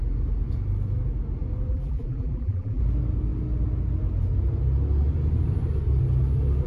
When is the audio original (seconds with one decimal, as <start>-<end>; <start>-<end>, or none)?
0.0-1.7; 2.8-6.7